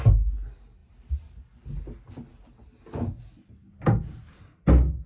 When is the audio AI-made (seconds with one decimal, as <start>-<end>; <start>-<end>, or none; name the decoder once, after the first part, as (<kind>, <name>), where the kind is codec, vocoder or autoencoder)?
3.6-4.4 (codec, DAC)